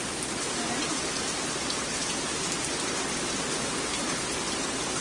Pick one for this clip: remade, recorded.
recorded